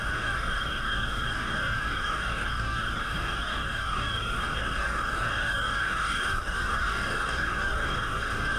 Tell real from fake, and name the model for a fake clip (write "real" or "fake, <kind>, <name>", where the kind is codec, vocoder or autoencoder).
fake, codec, DAC